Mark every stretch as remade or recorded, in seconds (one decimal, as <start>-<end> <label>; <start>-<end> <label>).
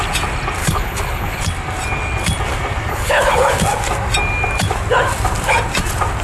0.0-0.6 recorded; 0.6-1.4 remade; 1.4-2.9 recorded; 2.9-3.5 remade; 3.5-6.2 recorded